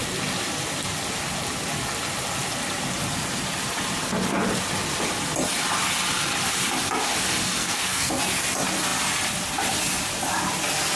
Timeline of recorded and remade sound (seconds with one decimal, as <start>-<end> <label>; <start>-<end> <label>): 0.0-7.6 recorded; 7.6-8.2 remade; 8.2-11.0 recorded